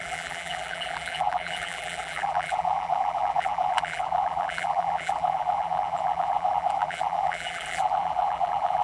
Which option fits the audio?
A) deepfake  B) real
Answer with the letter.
A